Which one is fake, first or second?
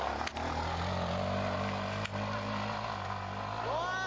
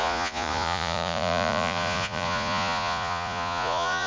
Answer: second